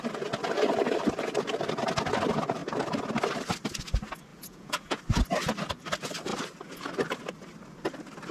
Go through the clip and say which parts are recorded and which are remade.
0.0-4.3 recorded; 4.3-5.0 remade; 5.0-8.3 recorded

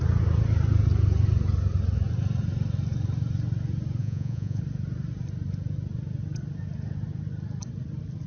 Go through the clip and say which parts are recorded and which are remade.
0.0-4.0 recorded; 4.0-4.6 remade; 4.6-8.3 recorded

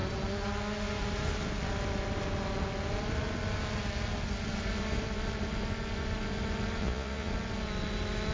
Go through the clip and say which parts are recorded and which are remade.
0.0-6.8 recorded; 6.8-7.3 remade; 7.3-8.3 recorded

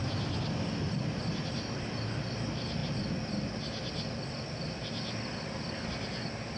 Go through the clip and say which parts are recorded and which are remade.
0.0-6.6 recorded

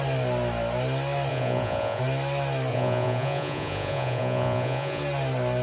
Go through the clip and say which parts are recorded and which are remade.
0.0-1.3 recorded; 1.3-2.0 remade; 2.0-2.7 recorded; 2.7-5.0 remade; 5.0-5.6 recorded

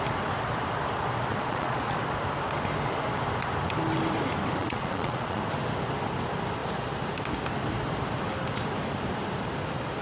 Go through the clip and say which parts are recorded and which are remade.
0.0-1.3 recorded; 1.3-2.0 remade; 2.0-4.6 recorded; 4.6-5.4 remade; 5.4-10.0 recorded

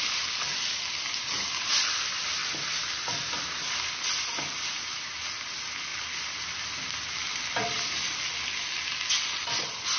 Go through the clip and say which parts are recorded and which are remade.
0.0-10.0 recorded

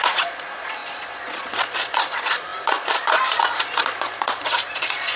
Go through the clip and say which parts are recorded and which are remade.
0.0-5.2 remade